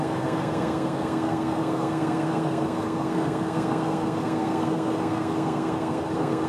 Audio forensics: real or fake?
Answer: fake